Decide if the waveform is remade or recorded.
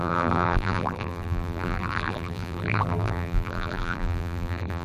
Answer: remade